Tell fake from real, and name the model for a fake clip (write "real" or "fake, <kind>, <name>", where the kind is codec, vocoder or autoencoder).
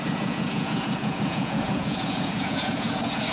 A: fake, vocoder, Vocos